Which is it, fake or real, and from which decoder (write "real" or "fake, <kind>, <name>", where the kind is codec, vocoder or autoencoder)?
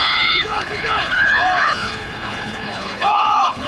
fake, codec, HILCodec